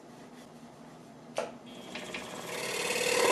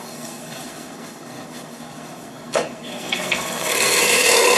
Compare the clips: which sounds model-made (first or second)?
second